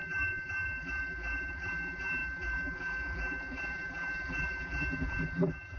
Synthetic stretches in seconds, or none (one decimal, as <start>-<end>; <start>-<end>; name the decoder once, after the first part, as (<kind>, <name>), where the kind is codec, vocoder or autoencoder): 0.0-5.8 (vocoder, BigVGAN v2)